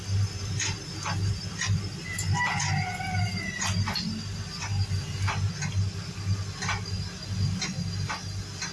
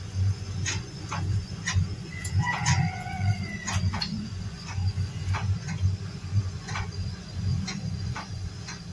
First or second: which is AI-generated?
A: second